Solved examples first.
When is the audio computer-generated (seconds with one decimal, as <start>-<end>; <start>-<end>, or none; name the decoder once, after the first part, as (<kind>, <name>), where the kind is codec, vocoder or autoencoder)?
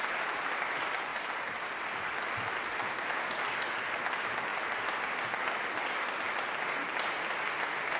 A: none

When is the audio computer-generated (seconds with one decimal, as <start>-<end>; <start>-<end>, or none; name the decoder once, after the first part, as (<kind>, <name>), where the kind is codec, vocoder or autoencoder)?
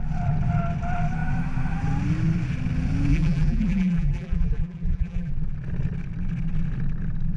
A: 3.1-5.3 (vocoder, BigVGAN v2)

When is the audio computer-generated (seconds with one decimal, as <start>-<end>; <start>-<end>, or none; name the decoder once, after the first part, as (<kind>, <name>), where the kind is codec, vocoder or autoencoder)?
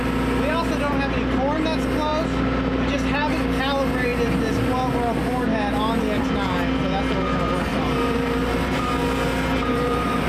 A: 7.7-8.9 (vocoder, BigVGAN v2); 9.6-10.3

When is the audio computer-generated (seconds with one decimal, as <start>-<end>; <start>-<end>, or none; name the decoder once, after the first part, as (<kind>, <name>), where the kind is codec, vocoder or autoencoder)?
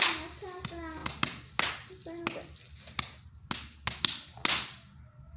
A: none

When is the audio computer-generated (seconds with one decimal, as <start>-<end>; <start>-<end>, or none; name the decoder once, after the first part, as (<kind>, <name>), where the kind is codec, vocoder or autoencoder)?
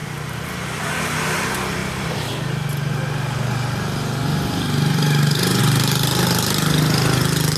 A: none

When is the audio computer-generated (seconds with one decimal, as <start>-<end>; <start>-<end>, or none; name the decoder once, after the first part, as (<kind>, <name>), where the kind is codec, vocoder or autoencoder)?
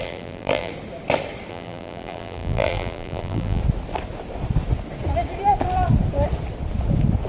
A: 0.0-0.7 (vocoder, BigVGAN v2); 1.5-3.6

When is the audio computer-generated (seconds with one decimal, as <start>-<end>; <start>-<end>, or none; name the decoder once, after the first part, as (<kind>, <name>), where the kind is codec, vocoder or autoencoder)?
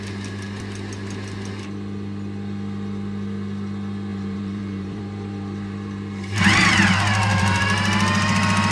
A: 4.1-7.6 (vocoder, BigVGAN v2)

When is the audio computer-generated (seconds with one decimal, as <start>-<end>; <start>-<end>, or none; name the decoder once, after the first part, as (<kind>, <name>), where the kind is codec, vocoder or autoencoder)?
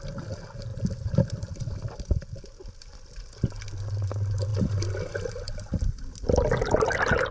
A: 0.7-1.6 (vocoder, BigVGAN v2)